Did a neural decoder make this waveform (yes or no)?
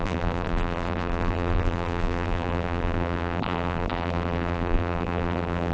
yes